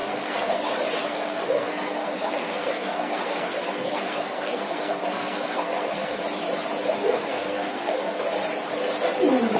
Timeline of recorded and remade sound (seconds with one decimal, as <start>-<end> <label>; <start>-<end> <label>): 0.0-0.6 remade; 0.6-1.0 recorded; 1.0-6.2 remade; 6.2-7.0 recorded; 7.0-8.2 remade; 8.2-9.6 recorded